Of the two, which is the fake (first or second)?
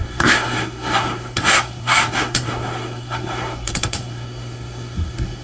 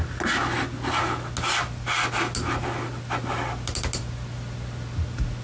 first